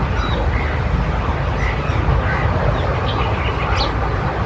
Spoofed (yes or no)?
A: no